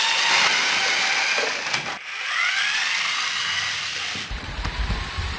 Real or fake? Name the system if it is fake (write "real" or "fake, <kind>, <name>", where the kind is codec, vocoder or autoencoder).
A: real